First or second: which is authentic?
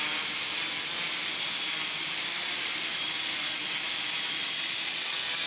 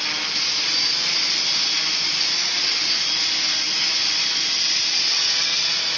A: second